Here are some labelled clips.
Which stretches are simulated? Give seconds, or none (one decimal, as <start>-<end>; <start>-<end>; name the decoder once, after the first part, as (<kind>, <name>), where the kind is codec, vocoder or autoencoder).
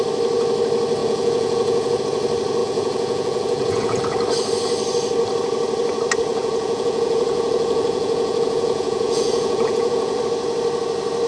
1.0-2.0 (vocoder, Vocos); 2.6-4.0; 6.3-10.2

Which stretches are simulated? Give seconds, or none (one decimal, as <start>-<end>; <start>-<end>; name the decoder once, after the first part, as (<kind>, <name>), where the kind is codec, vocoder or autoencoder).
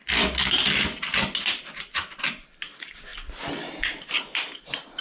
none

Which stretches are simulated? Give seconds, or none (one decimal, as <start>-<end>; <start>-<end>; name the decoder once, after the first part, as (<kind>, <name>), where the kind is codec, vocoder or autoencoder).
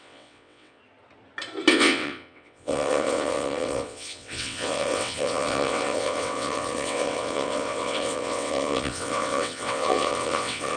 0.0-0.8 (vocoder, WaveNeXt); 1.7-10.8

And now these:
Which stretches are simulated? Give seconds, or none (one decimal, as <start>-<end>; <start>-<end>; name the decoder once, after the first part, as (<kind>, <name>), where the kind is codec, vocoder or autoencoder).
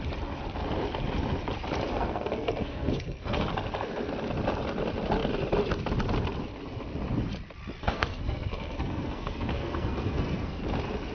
1.9-3.5 (codec, SNAC); 7.8-10.6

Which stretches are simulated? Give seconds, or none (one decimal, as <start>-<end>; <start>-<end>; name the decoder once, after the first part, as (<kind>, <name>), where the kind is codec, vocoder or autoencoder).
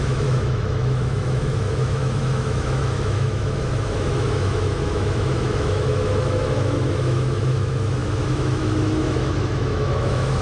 0.0-10.4 (autoencoder, DAC-VAE)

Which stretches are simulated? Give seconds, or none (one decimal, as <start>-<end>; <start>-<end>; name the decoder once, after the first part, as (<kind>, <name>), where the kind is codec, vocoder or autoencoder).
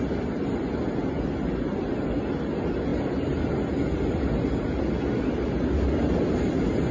none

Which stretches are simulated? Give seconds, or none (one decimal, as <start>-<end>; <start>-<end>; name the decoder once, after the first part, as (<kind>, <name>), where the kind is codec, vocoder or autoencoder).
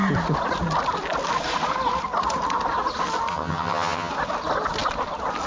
3.3-4.1 (vocoder, HiFi-GAN)